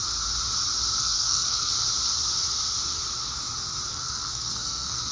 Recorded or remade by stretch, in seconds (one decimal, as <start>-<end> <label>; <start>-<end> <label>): 0.0-1.0 recorded; 1.0-1.7 remade; 1.7-3.9 recorded; 3.9-5.1 remade